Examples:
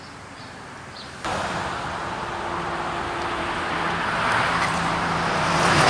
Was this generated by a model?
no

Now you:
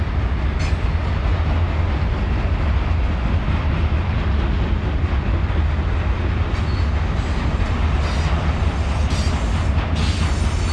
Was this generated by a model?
no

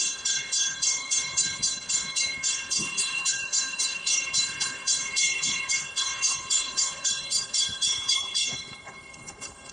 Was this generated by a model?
yes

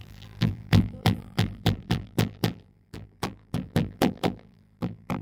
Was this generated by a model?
yes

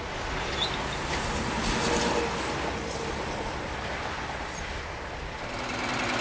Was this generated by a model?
no